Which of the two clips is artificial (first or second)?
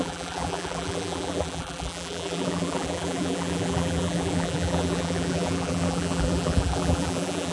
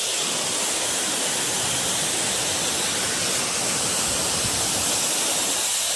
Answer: first